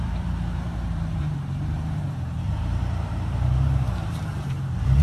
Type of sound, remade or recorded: remade